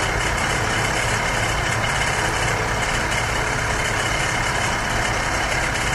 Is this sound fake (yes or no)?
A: yes